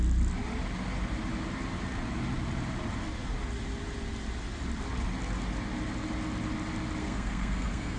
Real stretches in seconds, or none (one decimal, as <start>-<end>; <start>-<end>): 0.0-7.0